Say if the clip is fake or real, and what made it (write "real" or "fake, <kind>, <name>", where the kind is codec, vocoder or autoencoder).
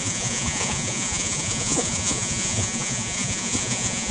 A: fake, vocoder, Vocos